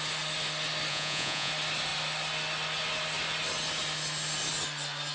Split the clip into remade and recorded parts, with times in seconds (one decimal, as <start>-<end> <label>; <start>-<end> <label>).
0.0-0.9 recorded; 0.9-1.5 remade; 1.5-5.1 recorded